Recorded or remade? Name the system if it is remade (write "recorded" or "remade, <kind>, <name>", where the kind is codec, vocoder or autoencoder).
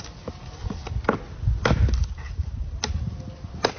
recorded